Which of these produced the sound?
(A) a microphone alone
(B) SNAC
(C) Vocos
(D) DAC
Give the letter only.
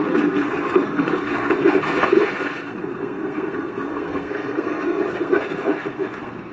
B